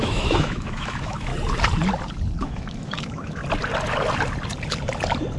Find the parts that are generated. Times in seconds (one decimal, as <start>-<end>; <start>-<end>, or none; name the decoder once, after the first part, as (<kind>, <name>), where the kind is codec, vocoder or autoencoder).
0.0-1.3 (autoencoder, DAC-VAE); 2.4-3.4